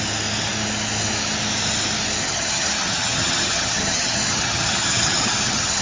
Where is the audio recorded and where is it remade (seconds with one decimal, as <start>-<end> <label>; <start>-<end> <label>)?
0.0-2.2 recorded; 2.2-5.8 remade